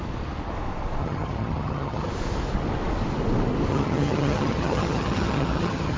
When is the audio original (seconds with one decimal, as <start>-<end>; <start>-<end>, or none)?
0.0-1.0; 2.1-3.7